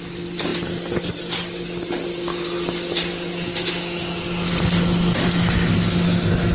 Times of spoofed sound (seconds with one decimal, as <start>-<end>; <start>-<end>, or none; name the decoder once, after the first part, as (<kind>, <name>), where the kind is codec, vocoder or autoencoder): 3.5-4.2 (autoencoder, DAC-VAE)